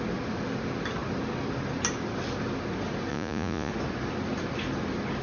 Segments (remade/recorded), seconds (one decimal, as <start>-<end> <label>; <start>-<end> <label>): 0.0-3.1 recorded; 3.1-3.7 remade; 3.7-5.2 recorded